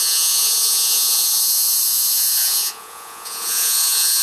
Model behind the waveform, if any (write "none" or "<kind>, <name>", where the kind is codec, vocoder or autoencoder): vocoder, Vocos